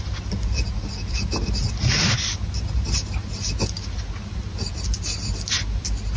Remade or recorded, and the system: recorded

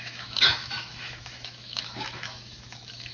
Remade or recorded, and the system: remade, autoencoder, DAC-VAE